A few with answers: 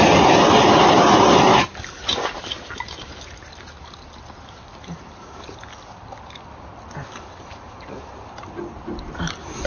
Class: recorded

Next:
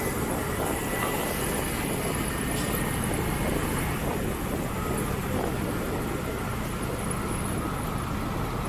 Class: recorded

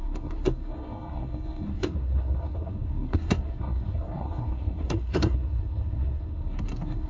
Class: remade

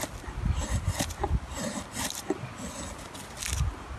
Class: recorded